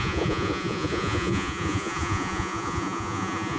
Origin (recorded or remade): remade